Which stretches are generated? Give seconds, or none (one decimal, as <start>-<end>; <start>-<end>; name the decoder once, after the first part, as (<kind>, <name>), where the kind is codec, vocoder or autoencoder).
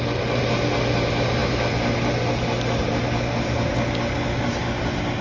none